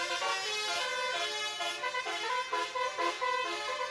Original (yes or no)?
yes